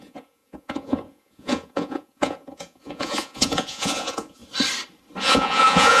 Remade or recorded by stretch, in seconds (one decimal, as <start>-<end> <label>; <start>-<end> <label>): 0.0-4.4 remade; 4.4-5.2 recorded; 5.2-6.0 remade